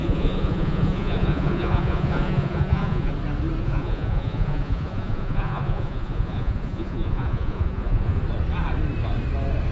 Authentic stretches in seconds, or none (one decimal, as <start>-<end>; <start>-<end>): 3.1-3.6; 8.2-9.7